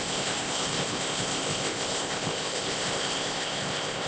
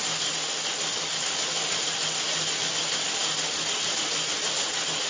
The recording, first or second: second